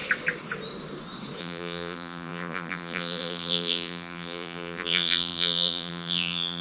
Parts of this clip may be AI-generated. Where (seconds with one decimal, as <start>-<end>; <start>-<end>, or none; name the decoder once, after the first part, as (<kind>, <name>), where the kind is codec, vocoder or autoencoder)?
1.4-6.6 (vocoder, BigVGAN v2)